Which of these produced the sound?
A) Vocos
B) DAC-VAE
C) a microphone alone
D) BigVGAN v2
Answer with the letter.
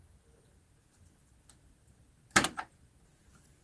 C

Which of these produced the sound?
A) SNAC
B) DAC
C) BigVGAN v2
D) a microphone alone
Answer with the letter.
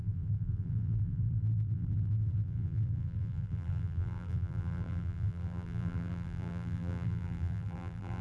C